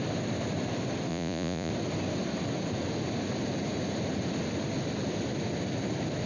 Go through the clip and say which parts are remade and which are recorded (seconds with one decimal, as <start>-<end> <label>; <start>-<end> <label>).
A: 0.0-1.1 recorded; 1.1-1.7 remade; 1.7-6.3 recorded